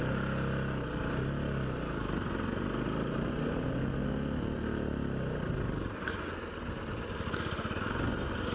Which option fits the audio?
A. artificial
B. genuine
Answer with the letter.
B